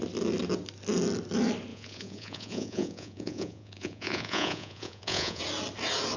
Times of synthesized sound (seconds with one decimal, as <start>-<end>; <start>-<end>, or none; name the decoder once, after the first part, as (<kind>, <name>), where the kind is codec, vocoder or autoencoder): 1.7-5.4 (vocoder, Vocos)